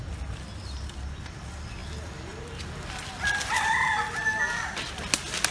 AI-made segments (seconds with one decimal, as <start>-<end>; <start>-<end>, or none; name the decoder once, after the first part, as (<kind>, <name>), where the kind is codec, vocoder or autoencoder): 1.8-5.1 (vocoder, BigVGAN v2)